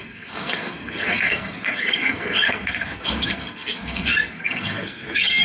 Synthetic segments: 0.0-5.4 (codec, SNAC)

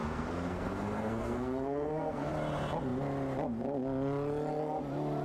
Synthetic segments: 0.0-2.3 (codec, SNAC)

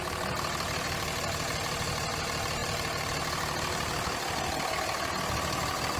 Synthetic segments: none